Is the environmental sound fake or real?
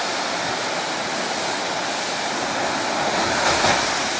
real